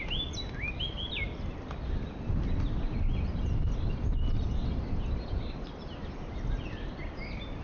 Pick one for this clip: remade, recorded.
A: recorded